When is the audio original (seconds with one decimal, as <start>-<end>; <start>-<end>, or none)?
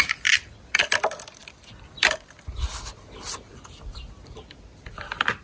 0.0-5.4